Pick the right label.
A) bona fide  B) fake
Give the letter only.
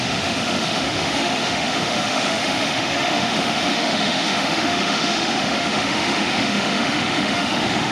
B